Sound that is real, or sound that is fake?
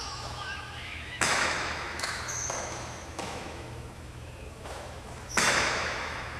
fake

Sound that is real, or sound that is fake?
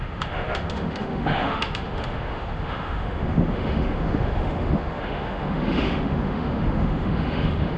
fake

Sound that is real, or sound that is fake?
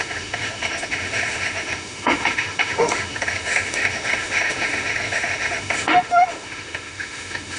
fake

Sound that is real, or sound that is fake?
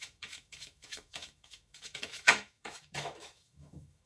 fake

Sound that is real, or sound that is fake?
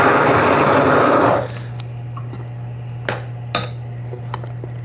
real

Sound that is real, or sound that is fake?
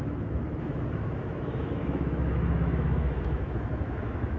fake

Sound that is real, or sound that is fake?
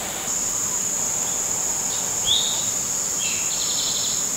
real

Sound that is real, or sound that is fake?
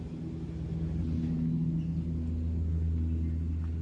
real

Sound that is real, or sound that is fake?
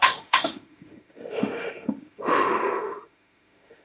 fake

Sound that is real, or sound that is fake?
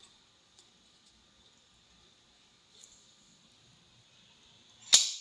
real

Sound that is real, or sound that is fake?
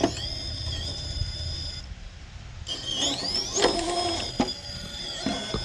real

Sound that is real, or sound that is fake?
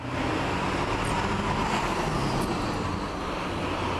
real